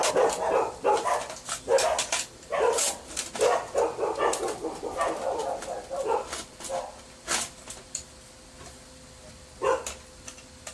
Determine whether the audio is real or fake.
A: real